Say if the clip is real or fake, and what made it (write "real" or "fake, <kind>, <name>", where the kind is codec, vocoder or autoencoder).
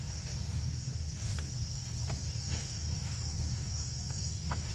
fake, codec, DAC